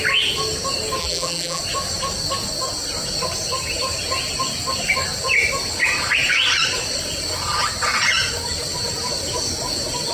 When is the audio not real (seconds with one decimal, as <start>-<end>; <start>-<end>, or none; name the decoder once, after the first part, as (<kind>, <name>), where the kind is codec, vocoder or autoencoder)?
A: 1.0-1.6 (vocoder, BigVGAN v2)